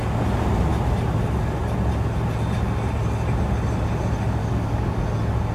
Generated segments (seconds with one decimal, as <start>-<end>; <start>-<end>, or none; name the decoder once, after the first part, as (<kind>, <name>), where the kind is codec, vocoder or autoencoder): 4.4-5.0 (codec, DAC)